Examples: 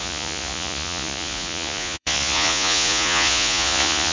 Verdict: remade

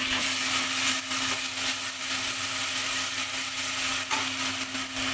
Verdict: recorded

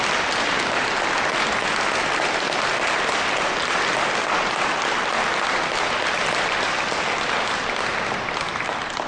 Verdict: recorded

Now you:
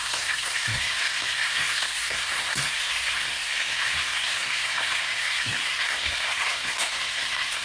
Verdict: remade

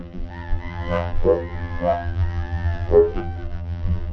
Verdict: remade